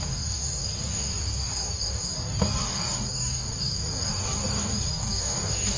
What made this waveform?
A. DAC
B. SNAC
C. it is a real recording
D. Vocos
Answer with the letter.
A